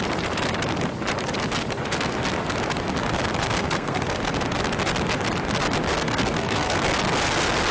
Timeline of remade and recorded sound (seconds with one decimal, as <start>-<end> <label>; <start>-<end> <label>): 0.0-3.4 recorded; 3.4-4.3 remade; 4.3-5.9 recorded; 5.9-6.8 remade; 6.8-7.7 recorded